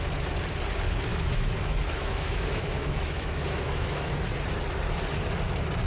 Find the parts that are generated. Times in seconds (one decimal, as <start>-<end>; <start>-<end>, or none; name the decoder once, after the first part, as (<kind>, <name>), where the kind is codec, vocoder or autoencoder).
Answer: 1.1-4.3 (autoencoder, DAC-VAE)